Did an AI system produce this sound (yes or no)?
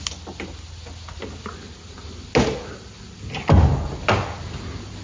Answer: no